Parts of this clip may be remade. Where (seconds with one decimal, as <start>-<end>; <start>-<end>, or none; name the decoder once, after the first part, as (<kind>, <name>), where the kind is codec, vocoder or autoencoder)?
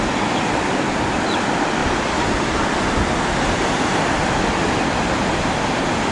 none